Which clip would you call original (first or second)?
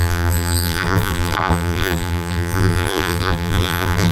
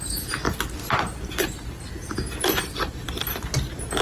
second